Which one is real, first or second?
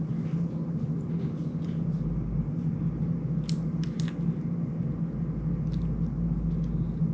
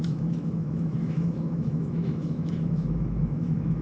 first